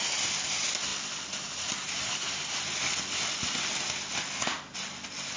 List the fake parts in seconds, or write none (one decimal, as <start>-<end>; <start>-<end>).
none

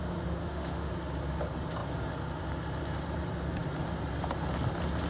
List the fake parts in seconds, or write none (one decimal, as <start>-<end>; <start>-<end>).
0.4-0.9